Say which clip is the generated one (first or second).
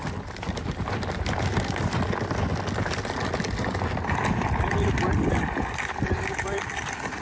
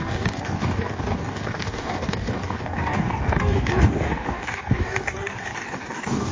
second